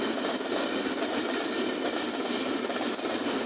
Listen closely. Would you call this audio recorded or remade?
recorded